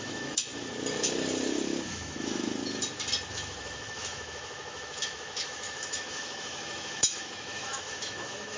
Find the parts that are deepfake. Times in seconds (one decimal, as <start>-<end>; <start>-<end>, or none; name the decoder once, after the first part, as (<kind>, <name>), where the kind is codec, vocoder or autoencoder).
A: 0.0-0.5 (autoencoder, DAC-VAE); 1.9-2.6; 3.3-8.6